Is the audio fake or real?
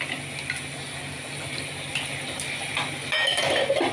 real